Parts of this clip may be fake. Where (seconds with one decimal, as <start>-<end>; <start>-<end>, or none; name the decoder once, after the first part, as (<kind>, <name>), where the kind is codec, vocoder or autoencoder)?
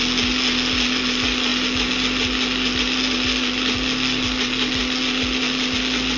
none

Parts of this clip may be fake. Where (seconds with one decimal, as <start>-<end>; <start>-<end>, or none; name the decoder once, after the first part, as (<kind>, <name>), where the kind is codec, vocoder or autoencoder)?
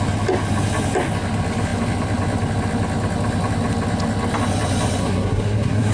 5.0-5.9 (codec, SNAC)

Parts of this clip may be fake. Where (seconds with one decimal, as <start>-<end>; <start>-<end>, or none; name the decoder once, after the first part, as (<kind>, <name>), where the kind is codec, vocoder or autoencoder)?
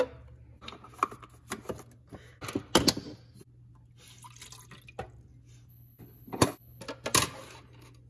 5.7-6.8 (codec, HILCodec)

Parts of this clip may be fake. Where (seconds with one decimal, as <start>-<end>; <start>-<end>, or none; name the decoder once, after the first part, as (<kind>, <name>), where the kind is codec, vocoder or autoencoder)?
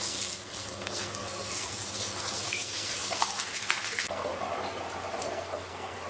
0.0-4.3 (codec, SNAC); 5.2-6.1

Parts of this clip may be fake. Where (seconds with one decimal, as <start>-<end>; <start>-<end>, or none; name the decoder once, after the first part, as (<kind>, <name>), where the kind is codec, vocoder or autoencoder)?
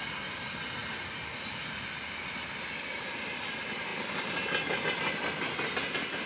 none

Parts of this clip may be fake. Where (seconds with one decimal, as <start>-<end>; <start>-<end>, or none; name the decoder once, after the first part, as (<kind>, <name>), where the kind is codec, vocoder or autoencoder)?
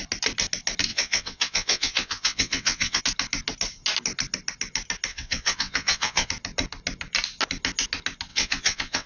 0.9-3.0 (vocoder, WaveNeXt); 5.1-6.3; 8.3-9.1